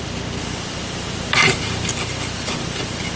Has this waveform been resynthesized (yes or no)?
no